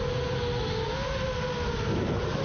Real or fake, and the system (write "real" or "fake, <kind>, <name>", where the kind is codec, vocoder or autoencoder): real